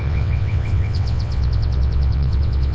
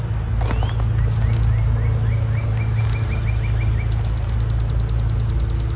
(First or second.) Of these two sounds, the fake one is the first